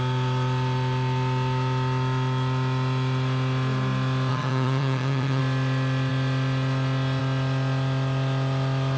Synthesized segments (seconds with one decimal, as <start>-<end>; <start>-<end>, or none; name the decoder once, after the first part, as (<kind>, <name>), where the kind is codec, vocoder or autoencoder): 4.3-5.4 (vocoder, HiFi-GAN)